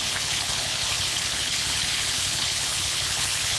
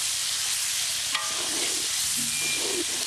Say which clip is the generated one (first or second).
first